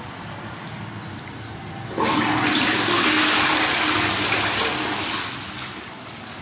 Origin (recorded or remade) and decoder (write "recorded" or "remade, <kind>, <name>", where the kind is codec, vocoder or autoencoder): recorded